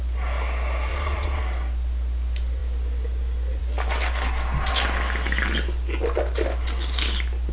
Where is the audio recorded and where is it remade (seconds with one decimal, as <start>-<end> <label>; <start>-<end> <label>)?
0.0-0.9 recorded; 0.9-1.4 remade; 1.4-7.5 recorded